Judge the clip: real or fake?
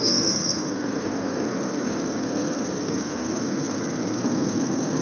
fake